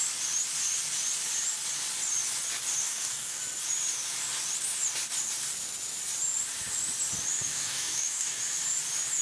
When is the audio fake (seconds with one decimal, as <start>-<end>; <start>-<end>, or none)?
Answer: 2.8-3.4; 7.5-8.4